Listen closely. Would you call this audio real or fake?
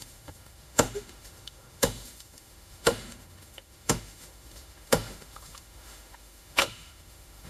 fake